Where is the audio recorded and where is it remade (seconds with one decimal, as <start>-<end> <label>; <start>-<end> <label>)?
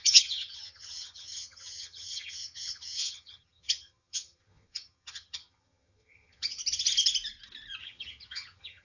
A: 0.0-6.6 remade; 6.6-7.8 recorded; 7.8-8.8 remade